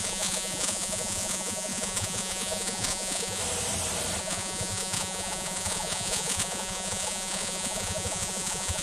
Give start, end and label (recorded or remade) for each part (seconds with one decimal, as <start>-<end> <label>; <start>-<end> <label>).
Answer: 0.0-3.4 remade; 3.4-4.2 recorded; 4.2-8.8 remade